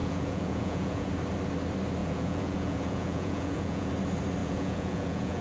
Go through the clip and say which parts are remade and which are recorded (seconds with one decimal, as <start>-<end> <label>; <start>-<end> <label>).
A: 0.0-1.1 remade; 1.1-2.0 recorded; 2.0-3.9 remade; 3.9-4.4 recorded; 4.4-5.4 remade